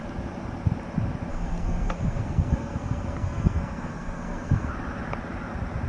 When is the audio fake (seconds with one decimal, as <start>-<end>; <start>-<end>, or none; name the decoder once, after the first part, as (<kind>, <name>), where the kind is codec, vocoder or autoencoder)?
1.3-4.7 (codec, SNAC)